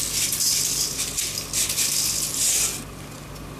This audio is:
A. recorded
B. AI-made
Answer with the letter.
A